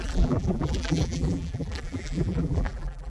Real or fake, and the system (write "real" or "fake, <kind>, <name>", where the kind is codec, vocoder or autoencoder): fake, vocoder, BigVGAN v2